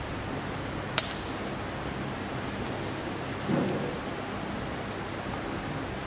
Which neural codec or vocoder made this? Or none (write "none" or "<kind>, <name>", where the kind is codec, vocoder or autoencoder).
none